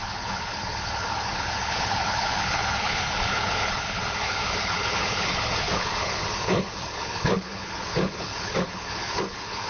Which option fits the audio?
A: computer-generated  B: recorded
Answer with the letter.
A